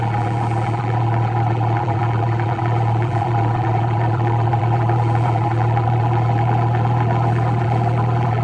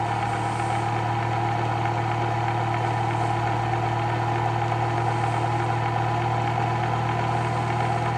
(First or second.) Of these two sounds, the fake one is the first